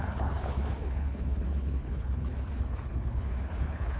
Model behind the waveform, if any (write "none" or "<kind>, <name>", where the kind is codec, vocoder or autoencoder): codec, HILCodec